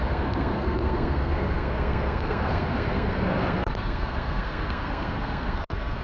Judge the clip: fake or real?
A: fake